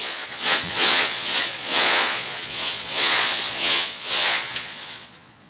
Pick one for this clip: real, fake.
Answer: fake